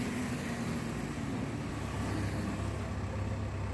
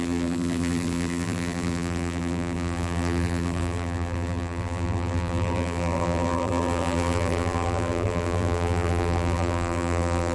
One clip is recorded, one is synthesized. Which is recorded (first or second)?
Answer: first